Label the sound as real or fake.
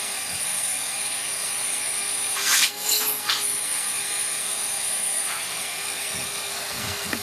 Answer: fake